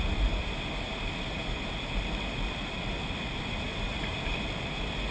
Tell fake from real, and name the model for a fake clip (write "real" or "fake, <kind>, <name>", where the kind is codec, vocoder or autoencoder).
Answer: real